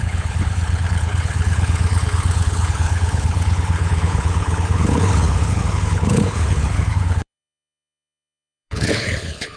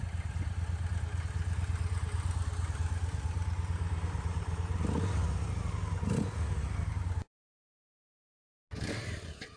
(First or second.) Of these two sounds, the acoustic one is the second